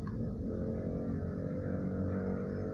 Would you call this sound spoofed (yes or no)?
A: no